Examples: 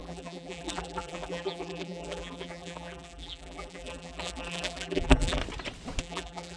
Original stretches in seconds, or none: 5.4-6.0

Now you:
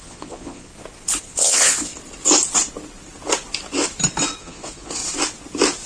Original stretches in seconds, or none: 0.7-1.2; 1.9-4.4; 5.0-5.9